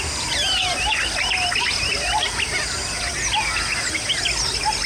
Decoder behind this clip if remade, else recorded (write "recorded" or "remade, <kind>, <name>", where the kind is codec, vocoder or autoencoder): recorded